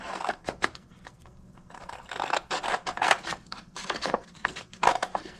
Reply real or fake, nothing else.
fake